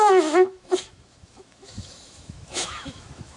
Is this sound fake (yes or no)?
yes